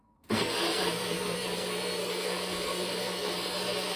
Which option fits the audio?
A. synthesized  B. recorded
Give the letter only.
A